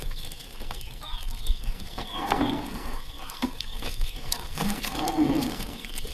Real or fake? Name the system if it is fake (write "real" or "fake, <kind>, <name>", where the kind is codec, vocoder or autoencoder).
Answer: fake, codec, SNAC